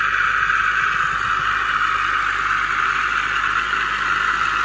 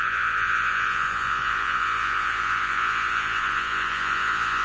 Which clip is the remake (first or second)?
second